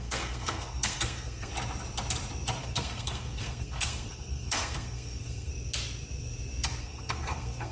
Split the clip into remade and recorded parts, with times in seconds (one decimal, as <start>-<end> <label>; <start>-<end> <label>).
0.0-1.5 remade; 1.5-2.6 recorded; 2.6-5.5 remade; 5.5-6.8 recorded; 6.8-7.7 remade